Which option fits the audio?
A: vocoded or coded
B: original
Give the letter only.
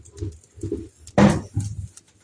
B